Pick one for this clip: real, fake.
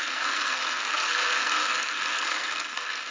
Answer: fake